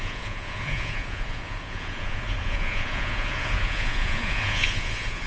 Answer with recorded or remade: remade